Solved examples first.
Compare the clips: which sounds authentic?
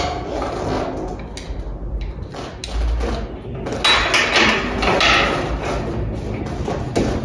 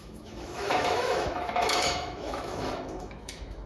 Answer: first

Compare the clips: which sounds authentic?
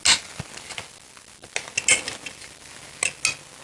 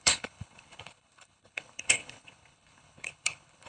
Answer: first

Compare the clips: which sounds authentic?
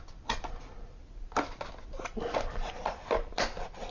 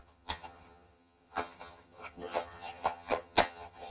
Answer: first